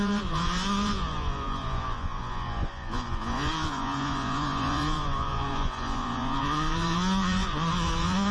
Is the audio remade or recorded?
remade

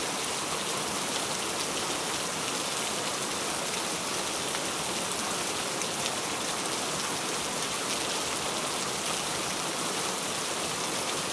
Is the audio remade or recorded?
recorded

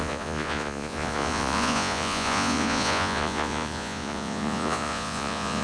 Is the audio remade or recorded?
remade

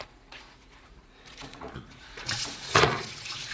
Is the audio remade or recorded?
remade